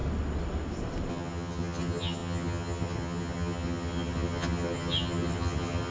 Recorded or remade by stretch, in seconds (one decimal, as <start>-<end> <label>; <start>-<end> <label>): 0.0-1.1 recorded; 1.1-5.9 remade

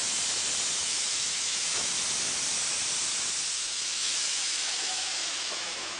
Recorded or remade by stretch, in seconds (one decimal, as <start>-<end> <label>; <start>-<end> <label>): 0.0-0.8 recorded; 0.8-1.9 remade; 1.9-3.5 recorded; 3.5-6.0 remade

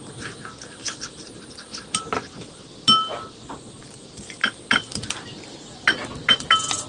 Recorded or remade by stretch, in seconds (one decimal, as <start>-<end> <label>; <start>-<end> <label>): 0.0-0.8 recorded; 0.8-2.3 remade; 2.3-6.9 recorded